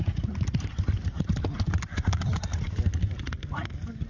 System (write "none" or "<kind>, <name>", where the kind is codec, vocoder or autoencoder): none